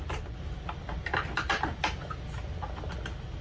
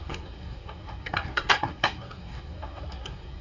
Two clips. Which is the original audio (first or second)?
first